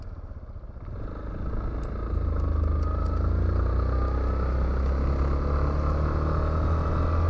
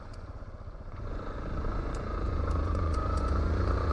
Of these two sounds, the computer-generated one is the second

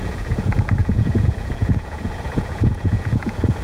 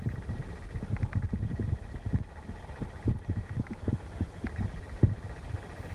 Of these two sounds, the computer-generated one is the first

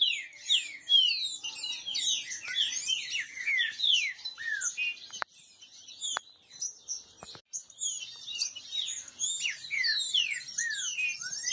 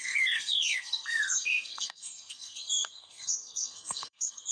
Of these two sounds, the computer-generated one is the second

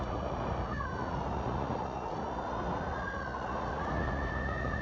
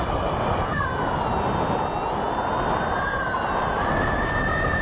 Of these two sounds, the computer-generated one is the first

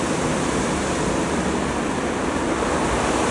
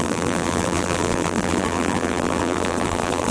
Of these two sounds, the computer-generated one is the second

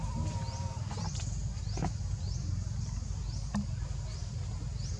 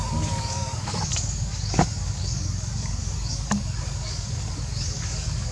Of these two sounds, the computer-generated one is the second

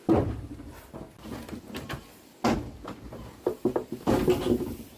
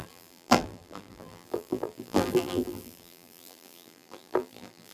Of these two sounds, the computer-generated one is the second